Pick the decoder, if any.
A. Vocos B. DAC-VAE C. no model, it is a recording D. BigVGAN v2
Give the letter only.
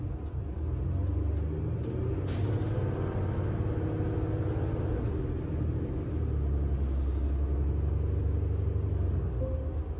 C